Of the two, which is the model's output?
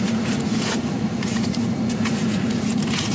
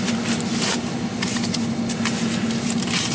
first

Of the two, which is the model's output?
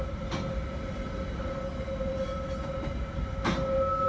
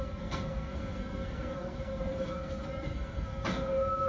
second